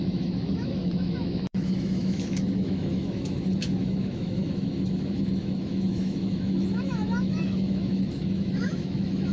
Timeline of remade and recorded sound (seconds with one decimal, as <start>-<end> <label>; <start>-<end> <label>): 0.0-9.3 remade